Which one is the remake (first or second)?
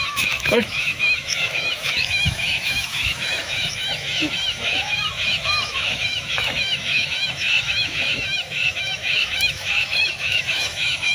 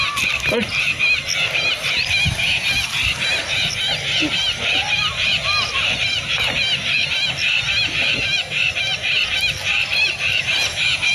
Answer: first